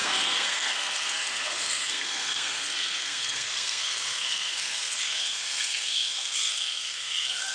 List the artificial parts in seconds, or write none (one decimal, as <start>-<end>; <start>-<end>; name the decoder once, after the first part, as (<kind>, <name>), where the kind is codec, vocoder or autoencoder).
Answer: 0.0-7.5 (codec, SNAC)